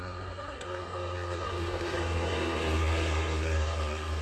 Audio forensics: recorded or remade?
remade